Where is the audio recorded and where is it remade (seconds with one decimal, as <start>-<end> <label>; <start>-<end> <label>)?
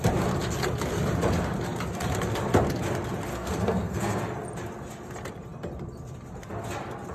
0.0-3.3 recorded; 3.3-4.2 remade; 4.2-7.1 recorded